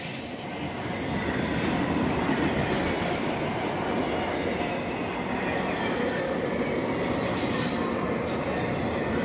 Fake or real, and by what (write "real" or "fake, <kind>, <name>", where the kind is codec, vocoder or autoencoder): real